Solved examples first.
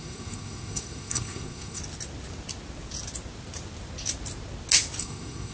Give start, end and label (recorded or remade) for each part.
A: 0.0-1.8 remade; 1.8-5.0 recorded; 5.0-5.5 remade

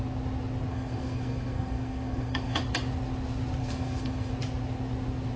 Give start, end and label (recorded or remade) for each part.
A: 0.0-0.7 recorded; 0.7-2.6 remade; 2.6-3.6 recorded; 3.6-4.3 remade; 4.3-5.4 recorded

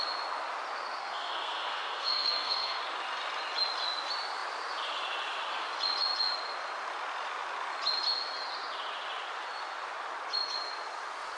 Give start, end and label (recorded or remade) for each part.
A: 0.0-1.0 recorded; 1.0-2.8 remade; 2.8-11.4 recorded